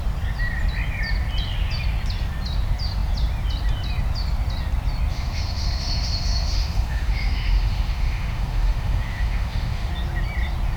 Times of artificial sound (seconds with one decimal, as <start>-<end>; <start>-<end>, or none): 5.1-9.9